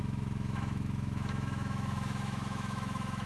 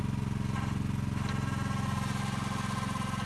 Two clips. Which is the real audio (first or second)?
second